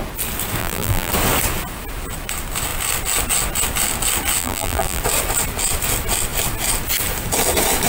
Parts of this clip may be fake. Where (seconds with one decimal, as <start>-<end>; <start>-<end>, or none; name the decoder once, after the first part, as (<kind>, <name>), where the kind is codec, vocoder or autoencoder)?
0.6-1.1 (vocoder, BigVGAN v2); 4.4-5.0